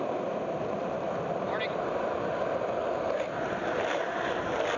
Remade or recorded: recorded